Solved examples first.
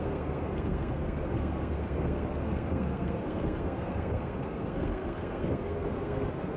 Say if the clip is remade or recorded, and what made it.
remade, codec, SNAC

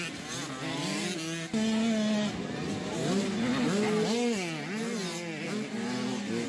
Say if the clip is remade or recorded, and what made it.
recorded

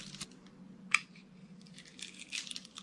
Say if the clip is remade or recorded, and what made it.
recorded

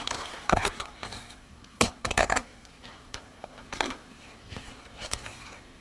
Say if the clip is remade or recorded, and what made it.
remade, codec, SNAC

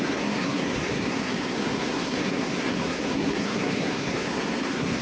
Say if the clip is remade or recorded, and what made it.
remade, codec, SNAC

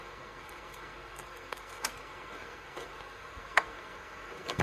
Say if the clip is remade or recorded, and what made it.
remade, codec, SNAC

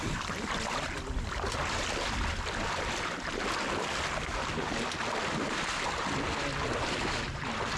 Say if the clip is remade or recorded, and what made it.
recorded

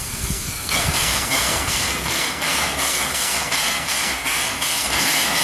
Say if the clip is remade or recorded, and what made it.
remade, codec, SNAC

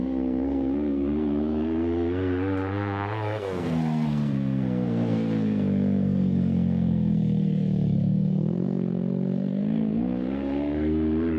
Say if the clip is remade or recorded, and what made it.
remade, codec, SNAC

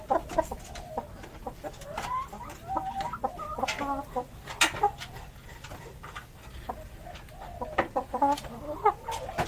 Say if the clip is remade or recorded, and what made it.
recorded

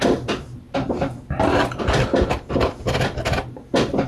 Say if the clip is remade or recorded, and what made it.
recorded